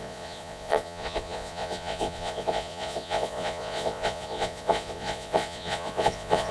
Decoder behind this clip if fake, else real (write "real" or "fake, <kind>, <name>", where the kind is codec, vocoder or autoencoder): fake, vocoder, Vocos